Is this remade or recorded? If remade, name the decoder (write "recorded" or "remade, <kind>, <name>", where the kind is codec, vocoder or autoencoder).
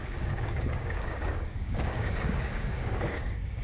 remade, codec, DAC